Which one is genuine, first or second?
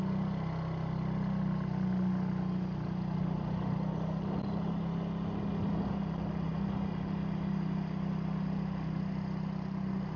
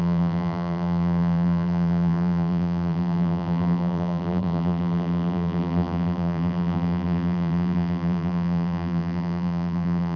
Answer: first